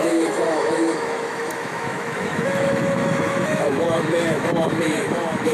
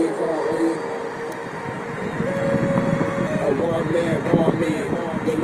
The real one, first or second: second